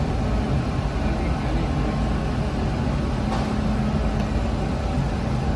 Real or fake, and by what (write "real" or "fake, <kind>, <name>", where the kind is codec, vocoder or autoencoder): real